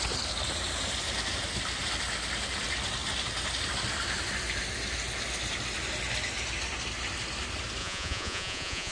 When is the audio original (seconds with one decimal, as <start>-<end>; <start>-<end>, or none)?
0.0-7.8